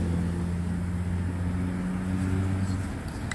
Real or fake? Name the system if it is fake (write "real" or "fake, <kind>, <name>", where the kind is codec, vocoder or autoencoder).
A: real